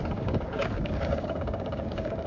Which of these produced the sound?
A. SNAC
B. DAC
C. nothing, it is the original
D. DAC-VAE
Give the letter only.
B